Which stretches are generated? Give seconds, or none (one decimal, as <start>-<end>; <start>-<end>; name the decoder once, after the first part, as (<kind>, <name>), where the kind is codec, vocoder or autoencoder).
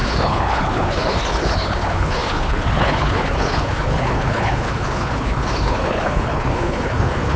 0.0-7.4 (codec, HILCodec)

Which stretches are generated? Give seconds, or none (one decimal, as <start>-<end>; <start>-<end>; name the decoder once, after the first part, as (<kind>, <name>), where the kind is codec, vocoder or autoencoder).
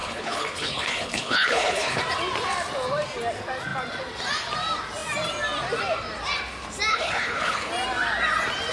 0.0-2.0 (codec, HILCodec); 6.9-7.7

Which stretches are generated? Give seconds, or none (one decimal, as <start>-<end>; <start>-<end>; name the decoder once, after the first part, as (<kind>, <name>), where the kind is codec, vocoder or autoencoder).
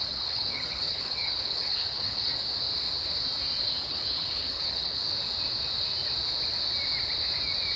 0.0-2.3 (codec, HILCodec); 3.6-5.0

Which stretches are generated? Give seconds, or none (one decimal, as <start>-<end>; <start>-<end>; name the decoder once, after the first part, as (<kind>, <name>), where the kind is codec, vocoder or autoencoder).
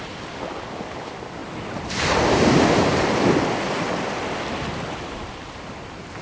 none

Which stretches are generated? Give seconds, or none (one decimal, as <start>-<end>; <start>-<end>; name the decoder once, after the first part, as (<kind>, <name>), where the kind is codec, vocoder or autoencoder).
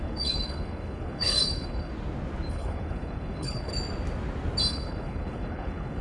0.0-1.9 (codec, HILCodec); 2.5-3.7; 4.7-6.0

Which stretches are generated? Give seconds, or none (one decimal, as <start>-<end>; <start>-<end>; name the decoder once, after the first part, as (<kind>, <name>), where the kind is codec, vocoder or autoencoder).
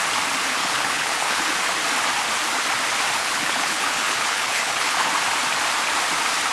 0.6-1.4 (codec, HILCodec); 3.2-5.1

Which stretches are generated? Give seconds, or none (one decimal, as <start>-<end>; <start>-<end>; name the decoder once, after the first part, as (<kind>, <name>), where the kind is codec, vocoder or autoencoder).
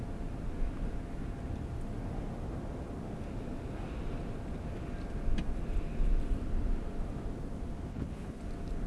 7.9-8.4 (codec, HILCodec)